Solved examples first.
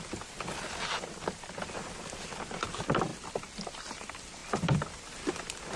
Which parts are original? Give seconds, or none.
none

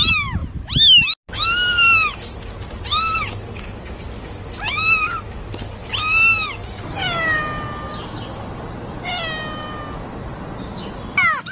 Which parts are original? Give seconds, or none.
0.0-11.5